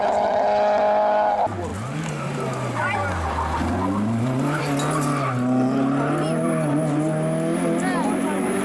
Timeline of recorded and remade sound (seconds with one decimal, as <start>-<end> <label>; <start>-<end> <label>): 0.0-8.6 recorded